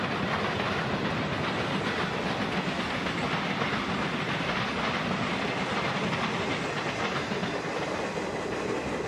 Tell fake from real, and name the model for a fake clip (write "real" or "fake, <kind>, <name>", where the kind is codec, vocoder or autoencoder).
real